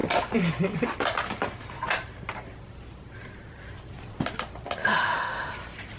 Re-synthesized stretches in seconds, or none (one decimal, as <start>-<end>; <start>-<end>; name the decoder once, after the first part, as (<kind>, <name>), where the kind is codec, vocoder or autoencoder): 4.8-5.5 (autoencoder, DAC-VAE)

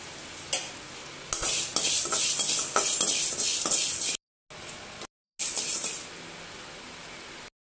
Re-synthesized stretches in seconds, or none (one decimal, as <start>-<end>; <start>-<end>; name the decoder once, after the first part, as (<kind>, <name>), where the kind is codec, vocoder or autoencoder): none

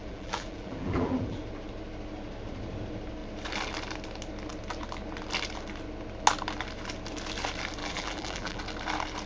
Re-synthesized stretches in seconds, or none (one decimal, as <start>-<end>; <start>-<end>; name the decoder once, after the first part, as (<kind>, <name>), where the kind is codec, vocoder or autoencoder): 0.0-1.4 (vocoder, BigVGAN v2); 7.8-8.6

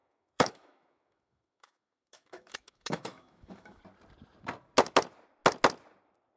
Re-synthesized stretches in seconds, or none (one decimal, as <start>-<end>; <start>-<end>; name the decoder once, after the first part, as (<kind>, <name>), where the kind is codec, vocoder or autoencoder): 0.0-3.8 (autoencoder, DAC-VAE)

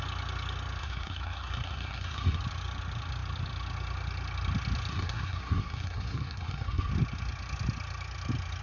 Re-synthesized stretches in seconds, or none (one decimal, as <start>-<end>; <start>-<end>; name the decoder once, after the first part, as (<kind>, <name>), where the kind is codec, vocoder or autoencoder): 0.8-2.4 (codec, SNAC); 4.9-6.9

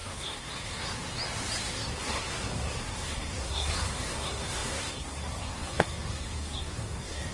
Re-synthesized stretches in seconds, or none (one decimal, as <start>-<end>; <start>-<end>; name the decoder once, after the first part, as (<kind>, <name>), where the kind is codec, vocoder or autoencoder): 0.0-1.1 (codec, SNAC); 1.7-7.3

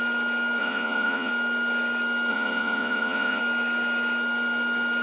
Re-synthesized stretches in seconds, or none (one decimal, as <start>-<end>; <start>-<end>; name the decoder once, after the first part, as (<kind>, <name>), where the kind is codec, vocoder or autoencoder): 0.6-1.3 (vocoder, Vocos); 2.3-3.4

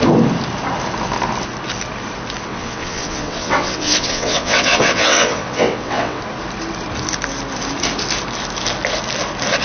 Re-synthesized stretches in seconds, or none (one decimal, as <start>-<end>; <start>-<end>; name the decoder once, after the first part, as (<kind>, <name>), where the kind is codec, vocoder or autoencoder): 2.5-6.2 (vocoder, WaveNeXt)